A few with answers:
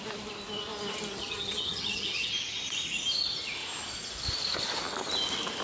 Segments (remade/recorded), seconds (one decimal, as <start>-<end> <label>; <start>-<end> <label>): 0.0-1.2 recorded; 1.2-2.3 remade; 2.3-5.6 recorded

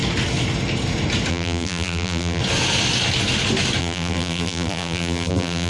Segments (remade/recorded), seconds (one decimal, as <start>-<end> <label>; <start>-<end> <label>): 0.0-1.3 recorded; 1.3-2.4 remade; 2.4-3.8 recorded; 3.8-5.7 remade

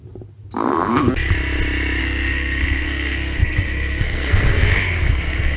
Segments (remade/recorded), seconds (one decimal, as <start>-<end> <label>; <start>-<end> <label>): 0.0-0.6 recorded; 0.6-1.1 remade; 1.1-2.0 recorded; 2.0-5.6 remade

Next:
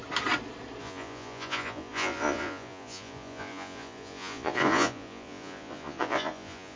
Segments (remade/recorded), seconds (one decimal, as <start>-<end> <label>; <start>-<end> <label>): 0.0-0.8 recorded; 0.8-6.8 remade

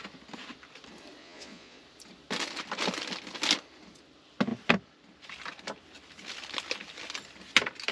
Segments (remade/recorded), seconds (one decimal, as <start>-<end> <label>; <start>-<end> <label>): 0.0-1.2 recorded; 1.2-1.8 remade; 1.8-7.9 recorded

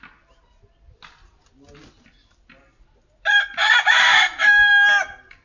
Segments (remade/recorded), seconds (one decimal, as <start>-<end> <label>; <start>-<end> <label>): 0.0-4.1 recorded; 4.1-4.7 remade; 4.7-5.4 recorded

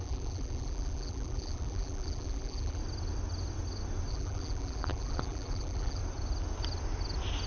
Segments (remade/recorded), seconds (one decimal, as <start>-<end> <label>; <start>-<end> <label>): 0.0-2.8 remade; 2.8-4.1 recorded; 4.1-6.0 remade; 6.0-7.5 recorded